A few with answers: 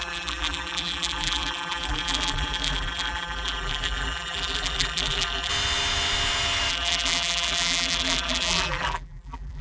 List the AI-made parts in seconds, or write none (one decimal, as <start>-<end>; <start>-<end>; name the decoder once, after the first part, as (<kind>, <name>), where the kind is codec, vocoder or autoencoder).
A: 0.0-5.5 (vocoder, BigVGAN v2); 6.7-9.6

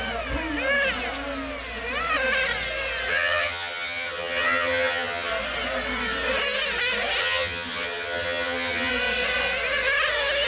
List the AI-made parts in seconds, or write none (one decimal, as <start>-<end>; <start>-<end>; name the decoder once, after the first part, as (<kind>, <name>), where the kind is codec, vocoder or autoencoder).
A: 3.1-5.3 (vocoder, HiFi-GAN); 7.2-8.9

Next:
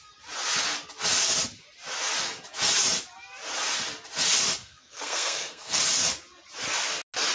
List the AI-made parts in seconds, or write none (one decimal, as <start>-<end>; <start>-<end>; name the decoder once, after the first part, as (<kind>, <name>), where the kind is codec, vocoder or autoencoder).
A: 4.6-5.8 (codec, SNAC)

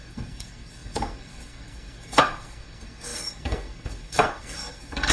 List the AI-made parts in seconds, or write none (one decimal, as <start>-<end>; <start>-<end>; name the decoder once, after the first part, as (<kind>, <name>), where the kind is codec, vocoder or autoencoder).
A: 0.0-5.1 (codec, SNAC)

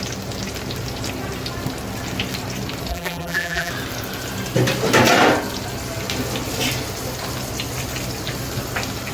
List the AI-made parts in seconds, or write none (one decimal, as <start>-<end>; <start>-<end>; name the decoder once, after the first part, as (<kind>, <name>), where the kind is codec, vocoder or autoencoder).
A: 2.9-3.7 (vocoder, BigVGAN v2)

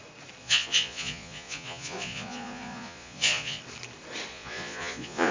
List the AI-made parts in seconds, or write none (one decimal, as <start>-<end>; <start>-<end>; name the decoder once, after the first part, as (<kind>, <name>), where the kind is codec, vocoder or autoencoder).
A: 0.4-3.6 (vocoder, Vocos); 4.3-5.3